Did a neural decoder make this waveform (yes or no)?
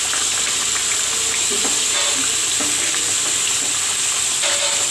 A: no